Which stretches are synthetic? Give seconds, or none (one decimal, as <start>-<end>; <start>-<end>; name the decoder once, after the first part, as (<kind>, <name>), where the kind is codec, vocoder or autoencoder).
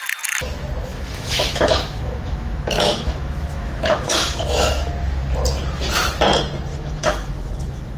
0.9-4.9 (autoencoder, DAC-VAE); 6.7-8.0